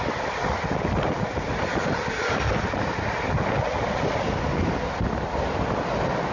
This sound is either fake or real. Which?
real